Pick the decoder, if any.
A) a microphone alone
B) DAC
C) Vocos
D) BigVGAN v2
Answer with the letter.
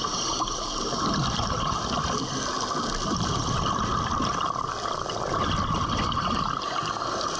A